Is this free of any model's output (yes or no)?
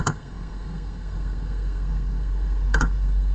no